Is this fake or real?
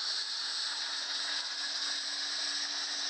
real